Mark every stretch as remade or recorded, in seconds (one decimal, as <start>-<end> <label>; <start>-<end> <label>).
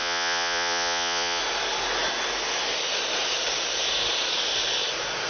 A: 0.0-1.4 remade; 1.4-5.3 recorded